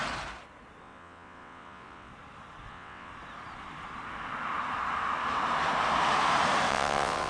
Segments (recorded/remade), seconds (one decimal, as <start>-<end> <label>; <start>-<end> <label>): 0.0-0.8 recorded; 0.8-2.1 remade; 2.1-2.7 recorded; 2.7-3.1 remade; 3.1-6.7 recorded; 6.7-7.3 remade